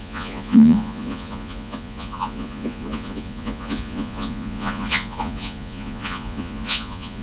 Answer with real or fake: fake